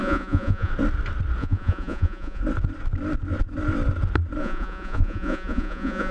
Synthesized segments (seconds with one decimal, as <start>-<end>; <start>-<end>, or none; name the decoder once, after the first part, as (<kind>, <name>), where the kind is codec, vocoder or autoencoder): 0.0-0.7 (vocoder, Vocos); 1.4-2.4; 4.4-6.1